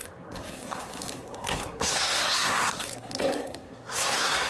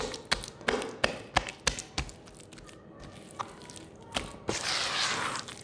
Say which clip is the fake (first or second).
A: first